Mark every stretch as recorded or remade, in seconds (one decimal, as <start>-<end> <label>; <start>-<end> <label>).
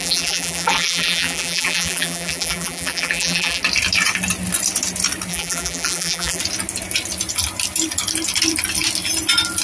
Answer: 0.0-3.6 remade; 3.6-5.3 recorded; 5.3-6.4 remade; 6.4-9.6 recorded